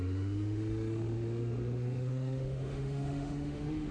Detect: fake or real fake